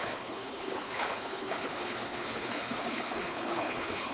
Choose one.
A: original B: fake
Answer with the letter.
B